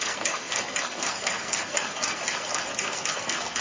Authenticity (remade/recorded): remade